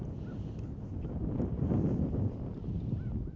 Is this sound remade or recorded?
recorded